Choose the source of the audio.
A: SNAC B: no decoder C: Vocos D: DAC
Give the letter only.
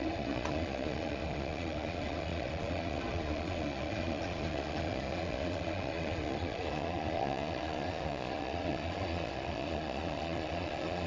C